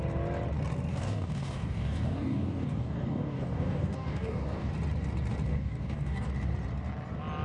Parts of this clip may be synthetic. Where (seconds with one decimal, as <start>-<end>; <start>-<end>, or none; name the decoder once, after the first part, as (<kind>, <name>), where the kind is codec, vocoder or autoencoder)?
0.9-4.7 (codec, DAC); 5.5-6.3